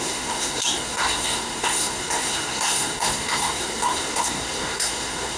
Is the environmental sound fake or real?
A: fake